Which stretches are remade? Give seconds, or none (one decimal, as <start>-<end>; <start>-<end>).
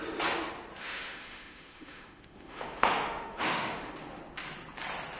0.8-3.9